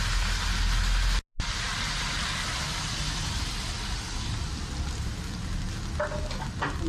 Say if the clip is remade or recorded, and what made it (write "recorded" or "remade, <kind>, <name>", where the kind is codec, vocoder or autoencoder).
recorded